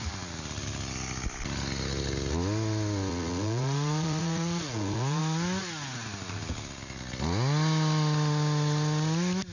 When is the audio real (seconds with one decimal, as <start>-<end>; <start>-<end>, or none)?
0.0-3.1; 5.2-9.5